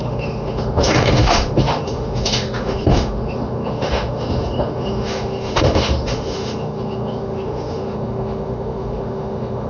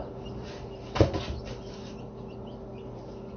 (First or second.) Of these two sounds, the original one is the second